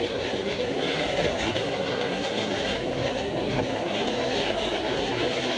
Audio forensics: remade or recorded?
remade